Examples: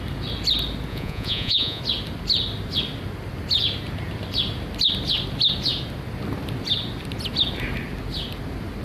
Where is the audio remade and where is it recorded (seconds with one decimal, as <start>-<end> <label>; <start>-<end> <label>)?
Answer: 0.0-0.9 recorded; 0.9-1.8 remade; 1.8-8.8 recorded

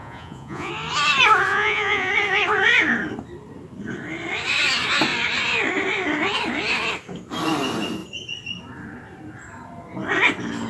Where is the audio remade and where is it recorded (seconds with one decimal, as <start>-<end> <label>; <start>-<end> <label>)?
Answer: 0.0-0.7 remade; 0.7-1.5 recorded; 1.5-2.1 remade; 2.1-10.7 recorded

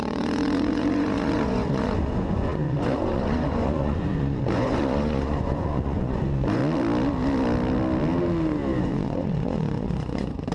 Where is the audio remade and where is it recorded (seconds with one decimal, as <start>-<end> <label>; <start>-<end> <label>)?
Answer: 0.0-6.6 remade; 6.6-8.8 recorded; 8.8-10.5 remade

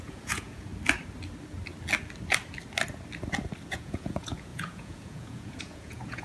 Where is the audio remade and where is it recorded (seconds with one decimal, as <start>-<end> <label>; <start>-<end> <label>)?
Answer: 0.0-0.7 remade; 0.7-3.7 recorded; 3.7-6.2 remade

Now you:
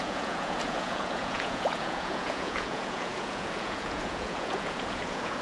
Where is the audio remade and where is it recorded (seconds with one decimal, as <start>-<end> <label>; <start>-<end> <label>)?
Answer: 0.0-5.4 remade